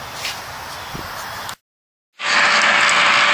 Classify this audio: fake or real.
real